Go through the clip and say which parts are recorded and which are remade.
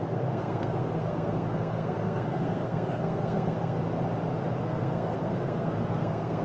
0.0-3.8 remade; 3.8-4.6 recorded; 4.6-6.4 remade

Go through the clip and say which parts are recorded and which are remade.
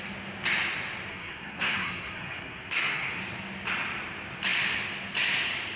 0.0-1.1 recorded; 1.1-3.2 remade; 3.2-5.8 recorded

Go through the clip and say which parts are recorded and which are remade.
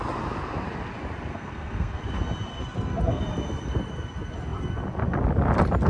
0.0-1.3 recorded; 1.3-2.0 remade; 2.0-2.5 recorded; 2.5-3.2 remade; 3.2-5.9 recorded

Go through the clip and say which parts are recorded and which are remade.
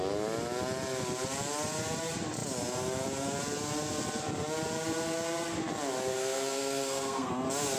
0.0-6.2 recorded; 6.2-7.3 remade; 7.3-7.8 recorded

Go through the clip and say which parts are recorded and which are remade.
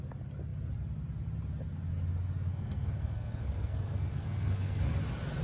0.0-2.5 recorded; 2.5-4.8 remade; 4.8-5.4 recorded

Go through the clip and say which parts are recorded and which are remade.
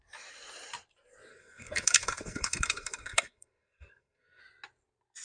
0.0-1.3 recorded; 1.3-4.4 remade; 4.4-5.2 recorded